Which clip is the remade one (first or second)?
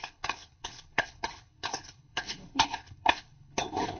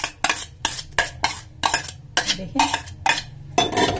first